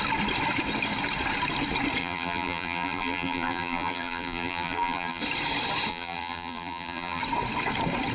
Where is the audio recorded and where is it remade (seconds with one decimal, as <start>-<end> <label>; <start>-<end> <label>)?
0.0-2.0 recorded; 2.0-5.2 remade; 5.2-5.9 recorded; 5.9-7.2 remade; 7.2-8.1 recorded